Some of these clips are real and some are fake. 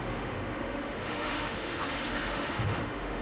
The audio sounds fake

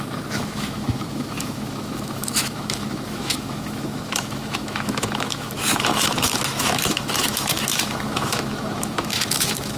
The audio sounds fake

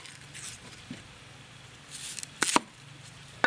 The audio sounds real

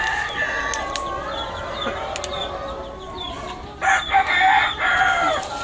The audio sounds real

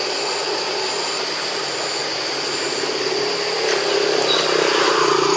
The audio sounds real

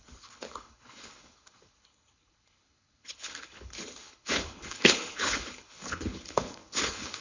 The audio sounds fake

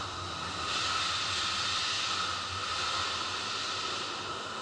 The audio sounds real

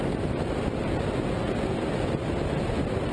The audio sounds real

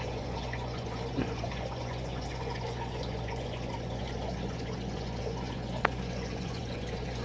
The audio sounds fake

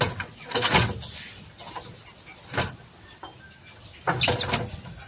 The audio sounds real